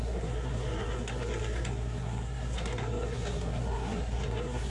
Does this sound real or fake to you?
fake